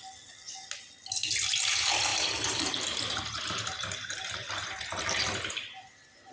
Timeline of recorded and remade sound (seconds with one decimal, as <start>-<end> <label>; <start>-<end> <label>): 0.0-2.1 recorded; 2.1-6.3 remade